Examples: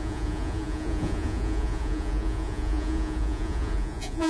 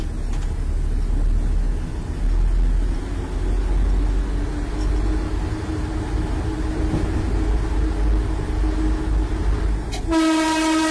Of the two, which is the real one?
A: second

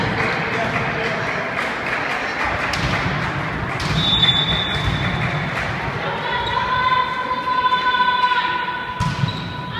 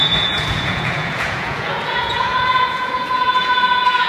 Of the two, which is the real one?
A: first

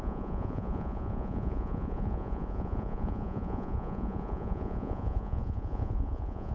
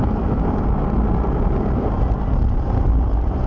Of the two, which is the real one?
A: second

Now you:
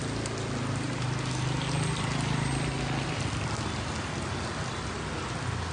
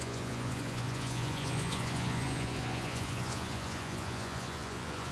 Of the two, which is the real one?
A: first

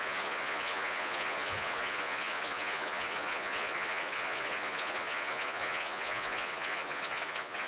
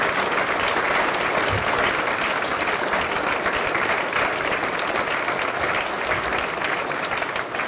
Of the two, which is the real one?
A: second